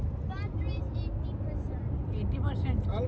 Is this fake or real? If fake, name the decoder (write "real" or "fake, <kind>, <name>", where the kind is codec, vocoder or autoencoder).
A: real